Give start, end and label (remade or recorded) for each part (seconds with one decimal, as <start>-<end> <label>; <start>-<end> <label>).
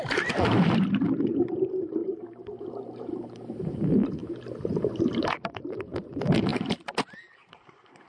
0.0-8.1 remade